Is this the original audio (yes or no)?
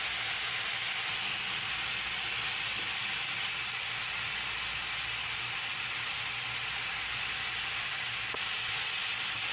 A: yes